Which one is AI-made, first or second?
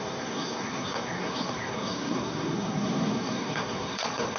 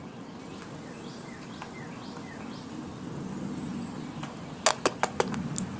first